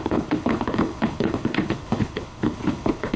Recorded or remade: remade